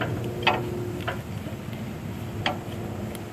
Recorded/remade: recorded